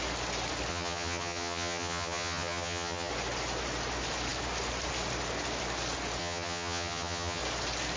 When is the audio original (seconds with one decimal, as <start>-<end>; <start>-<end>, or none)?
0.0-0.7; 3.1-6.2; 7.4-8.0